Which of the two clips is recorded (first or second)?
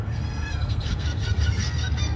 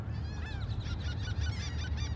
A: second